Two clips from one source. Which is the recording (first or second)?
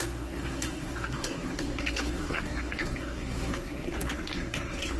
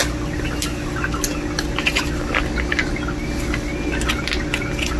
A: second